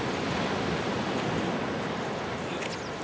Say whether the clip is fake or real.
real